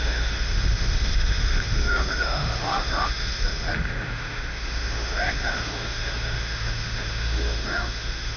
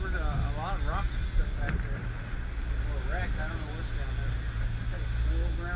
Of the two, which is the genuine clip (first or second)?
second